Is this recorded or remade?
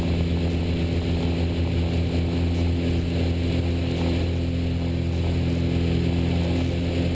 recorded